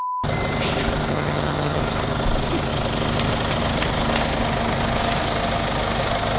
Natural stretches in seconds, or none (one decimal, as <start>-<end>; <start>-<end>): 0.0-1.1; 1.8-6.4